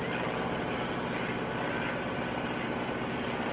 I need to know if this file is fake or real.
real